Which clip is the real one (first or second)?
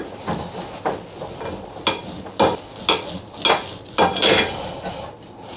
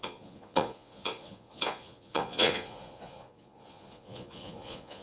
first